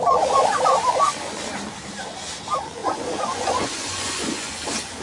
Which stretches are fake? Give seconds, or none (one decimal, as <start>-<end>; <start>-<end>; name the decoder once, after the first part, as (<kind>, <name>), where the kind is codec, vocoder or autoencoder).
2.8-4.6 (vocoder, Vocos)